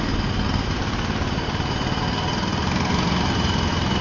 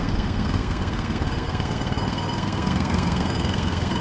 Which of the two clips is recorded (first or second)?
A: first